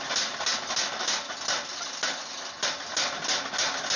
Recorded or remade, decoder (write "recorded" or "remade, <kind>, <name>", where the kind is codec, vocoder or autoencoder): recorded